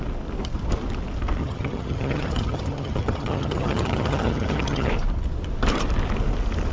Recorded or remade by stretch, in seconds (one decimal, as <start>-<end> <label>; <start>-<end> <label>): 0.0-1.4 recorded; 1.4-4.9 remade; 4.9-6.7 recorded